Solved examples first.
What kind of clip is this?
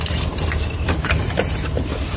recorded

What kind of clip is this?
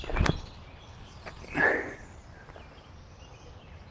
recorded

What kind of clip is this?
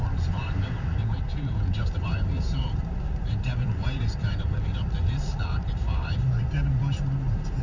remade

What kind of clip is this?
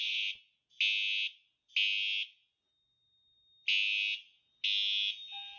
recorded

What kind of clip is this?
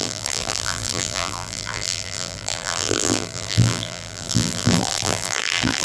remade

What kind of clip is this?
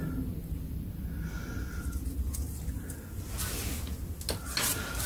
recorded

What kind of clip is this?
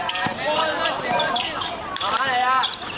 remade